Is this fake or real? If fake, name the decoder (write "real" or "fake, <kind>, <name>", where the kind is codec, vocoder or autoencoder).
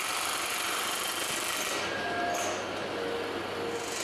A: real